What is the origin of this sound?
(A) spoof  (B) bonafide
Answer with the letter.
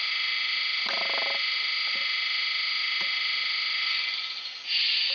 B